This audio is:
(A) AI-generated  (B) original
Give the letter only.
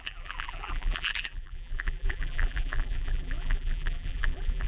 A